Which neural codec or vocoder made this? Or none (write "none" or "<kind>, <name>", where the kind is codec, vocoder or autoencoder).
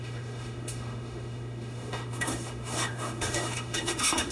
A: autoencoder, DAC-VAE